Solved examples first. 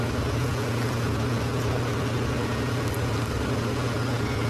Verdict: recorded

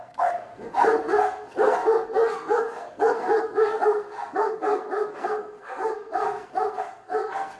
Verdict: remade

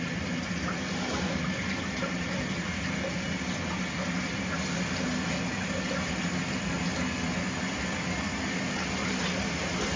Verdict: recorded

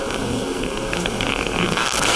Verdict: remade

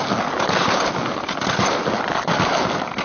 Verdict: recorded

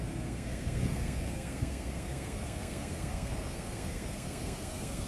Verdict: remade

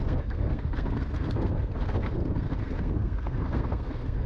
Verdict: remade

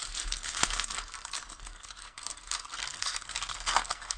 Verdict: remade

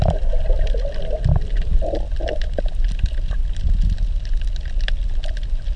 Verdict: recorded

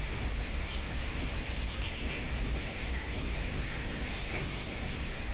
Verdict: remade